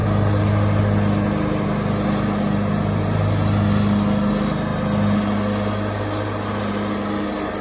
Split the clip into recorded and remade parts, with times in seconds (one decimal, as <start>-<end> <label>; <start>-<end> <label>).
0.0-7.6 recorded